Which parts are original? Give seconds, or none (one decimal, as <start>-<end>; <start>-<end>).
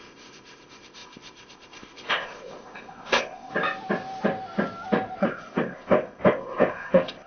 3.5-5.2